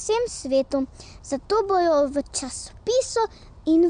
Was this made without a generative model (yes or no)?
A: yes